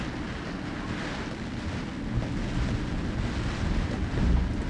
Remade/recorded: recorded